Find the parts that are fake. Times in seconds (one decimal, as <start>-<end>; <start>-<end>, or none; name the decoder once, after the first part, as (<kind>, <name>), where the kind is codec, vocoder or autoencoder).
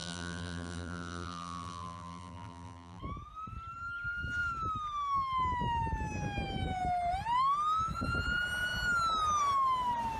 0.0-3.0 (vocoder, BigVGAN v2)